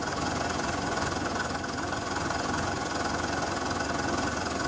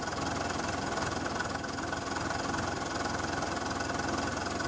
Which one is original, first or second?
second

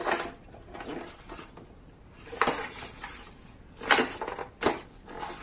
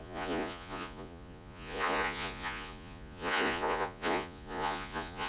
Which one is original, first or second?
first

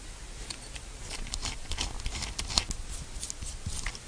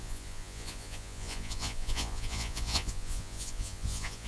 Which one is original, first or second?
first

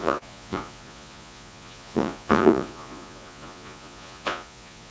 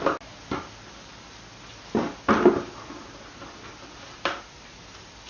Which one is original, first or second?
second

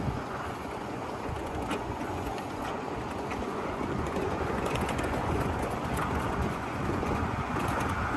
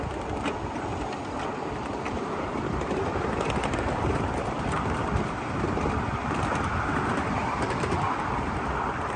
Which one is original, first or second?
second